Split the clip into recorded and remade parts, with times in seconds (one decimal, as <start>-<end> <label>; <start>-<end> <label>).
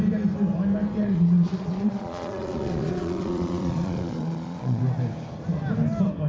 0.0-1.0 recorded; 1.0-4.8 remade; 4.8-6.3 recorded